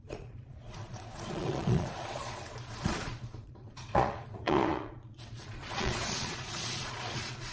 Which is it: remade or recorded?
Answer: remade